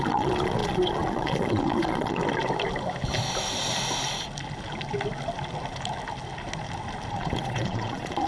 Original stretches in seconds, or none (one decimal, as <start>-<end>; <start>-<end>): 2.2-7.1